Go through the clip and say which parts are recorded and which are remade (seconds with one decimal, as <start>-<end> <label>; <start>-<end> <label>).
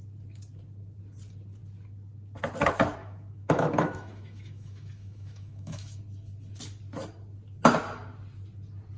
0.0-3.0 recorded; 3.0-6.0 remade; 6.0-9.0 recorded